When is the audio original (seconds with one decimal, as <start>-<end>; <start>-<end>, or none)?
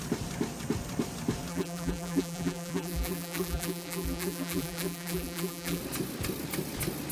0.0-1.5; 5.8-7.1